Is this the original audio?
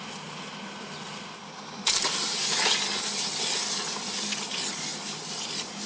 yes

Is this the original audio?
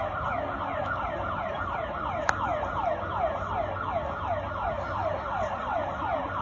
yes